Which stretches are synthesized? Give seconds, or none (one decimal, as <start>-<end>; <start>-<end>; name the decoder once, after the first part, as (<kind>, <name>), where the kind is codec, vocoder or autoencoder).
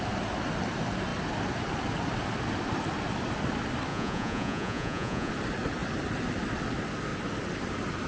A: 3.9-5.3 (vocoder, Vocos)